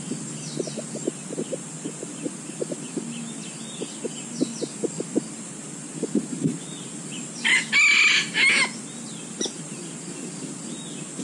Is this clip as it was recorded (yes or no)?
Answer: yes